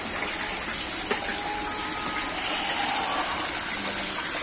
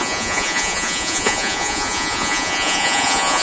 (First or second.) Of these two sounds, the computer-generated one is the second